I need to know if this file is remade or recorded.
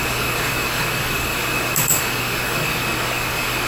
remade